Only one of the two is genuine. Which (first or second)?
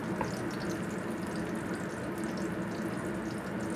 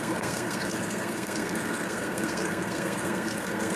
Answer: first